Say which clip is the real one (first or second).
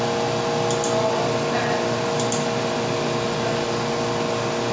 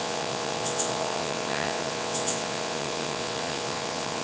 first